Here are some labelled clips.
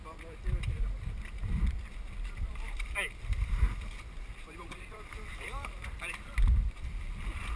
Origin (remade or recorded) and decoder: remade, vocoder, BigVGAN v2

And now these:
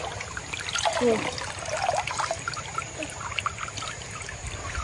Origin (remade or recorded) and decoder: recorded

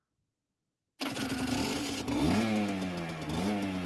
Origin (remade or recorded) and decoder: recorded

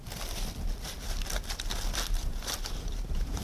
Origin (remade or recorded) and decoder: remade, vocoder, BigVGAN v2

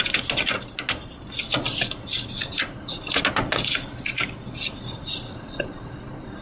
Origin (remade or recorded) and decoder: recorded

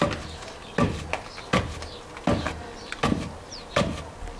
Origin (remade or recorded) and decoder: recorded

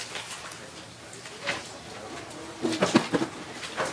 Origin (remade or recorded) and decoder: recorded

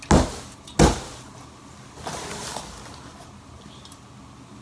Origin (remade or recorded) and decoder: recorded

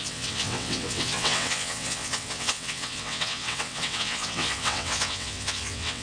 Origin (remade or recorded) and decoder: remade, vocoder, WaveNeXt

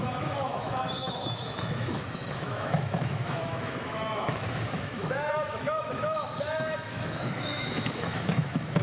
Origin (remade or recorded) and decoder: remade, autoencoder, DAC-VAE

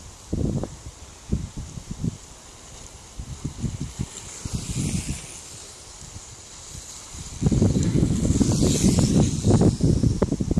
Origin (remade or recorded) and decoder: remade, vocoder, BigVGAN v2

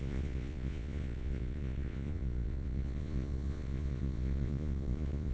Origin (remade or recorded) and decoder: remade, vocoder, Vocos